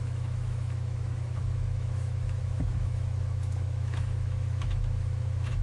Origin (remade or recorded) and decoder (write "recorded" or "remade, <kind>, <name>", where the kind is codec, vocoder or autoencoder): remade, autoencoder, DAC-VAE